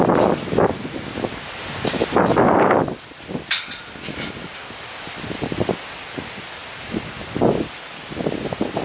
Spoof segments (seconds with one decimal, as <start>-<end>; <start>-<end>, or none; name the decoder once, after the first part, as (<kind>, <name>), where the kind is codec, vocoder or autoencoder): none